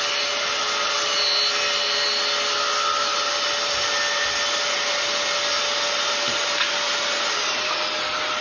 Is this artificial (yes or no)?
no